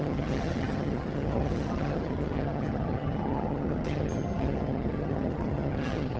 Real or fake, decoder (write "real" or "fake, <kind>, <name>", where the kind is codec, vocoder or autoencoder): fake, vocoder, HiFi-GAN